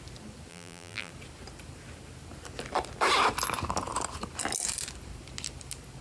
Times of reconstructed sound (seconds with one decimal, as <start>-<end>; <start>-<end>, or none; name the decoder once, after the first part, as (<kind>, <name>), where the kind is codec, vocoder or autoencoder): 0.5-1.1 (vocoder, BigVGAN v2)